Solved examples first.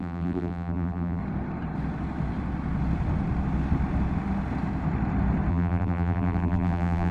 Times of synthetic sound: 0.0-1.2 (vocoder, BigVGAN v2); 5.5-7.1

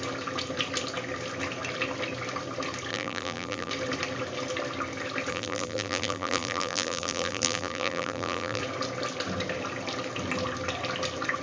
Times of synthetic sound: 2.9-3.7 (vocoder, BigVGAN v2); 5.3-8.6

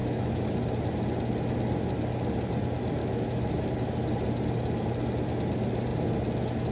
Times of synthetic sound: 0.0-0.5 (autoencoder, DAC-VAE); 3.0-3.5